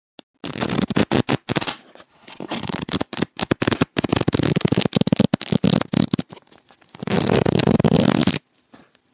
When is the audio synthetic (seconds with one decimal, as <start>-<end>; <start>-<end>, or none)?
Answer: 2.1-2.7